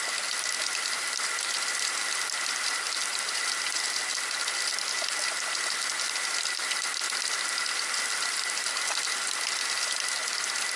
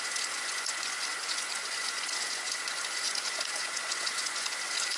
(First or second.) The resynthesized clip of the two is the second